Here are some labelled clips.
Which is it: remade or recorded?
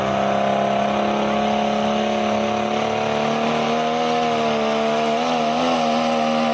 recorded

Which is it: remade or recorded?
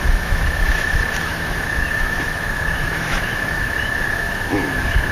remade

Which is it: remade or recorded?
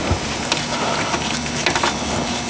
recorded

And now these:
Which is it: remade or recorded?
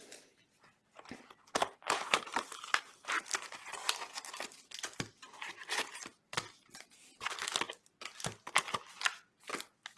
recorded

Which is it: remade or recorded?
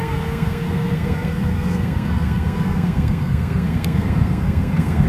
remade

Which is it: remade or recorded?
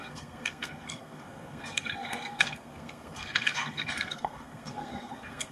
remade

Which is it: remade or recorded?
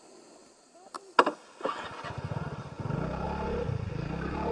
recorded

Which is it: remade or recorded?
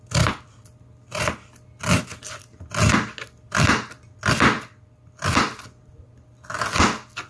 recorded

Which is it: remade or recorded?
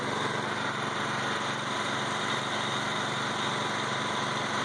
recorded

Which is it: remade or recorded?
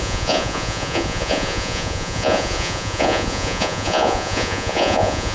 remade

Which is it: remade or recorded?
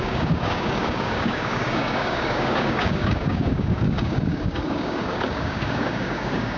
remade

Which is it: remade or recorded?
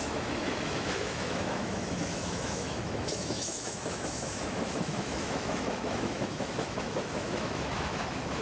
remade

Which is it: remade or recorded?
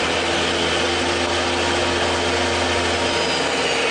recorded